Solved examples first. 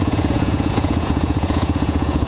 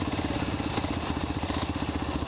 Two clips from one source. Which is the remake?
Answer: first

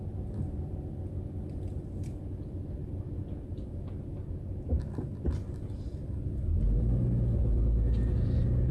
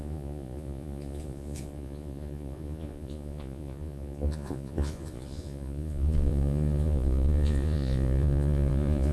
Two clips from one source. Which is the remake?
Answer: second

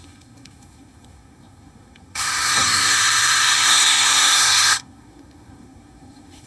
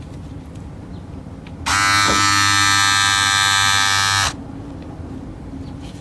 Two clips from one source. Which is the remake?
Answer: first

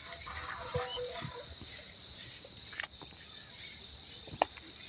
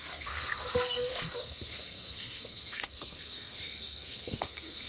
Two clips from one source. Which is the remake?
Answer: second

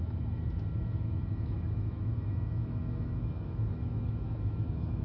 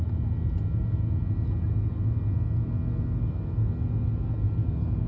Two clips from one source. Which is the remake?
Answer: first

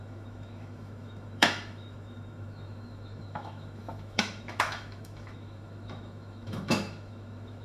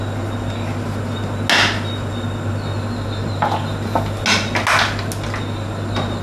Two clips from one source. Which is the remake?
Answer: first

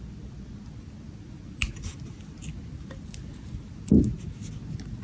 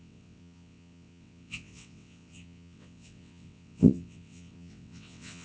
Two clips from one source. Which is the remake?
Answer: second